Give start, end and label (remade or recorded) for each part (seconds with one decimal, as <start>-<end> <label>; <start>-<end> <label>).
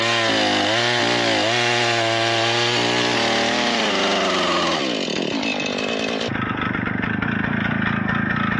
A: 0.0-8.6 recorded